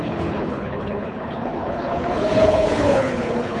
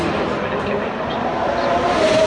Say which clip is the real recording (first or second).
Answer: second